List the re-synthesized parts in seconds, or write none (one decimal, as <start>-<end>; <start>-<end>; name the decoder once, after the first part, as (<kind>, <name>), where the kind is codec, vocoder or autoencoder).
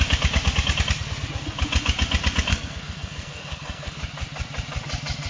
2.5-4.0 (codec, SNAC)